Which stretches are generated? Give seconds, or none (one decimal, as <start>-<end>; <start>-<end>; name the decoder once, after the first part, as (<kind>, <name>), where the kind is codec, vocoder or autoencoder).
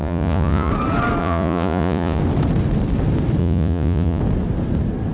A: 0.0-0.7 (vocoder, Vocos); 1.2-2.2; 3.4-4.2